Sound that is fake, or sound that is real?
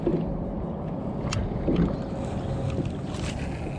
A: real